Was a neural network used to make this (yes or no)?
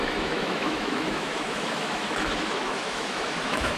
yes